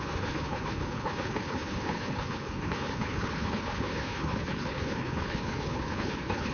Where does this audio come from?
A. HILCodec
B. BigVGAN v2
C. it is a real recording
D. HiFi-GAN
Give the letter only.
A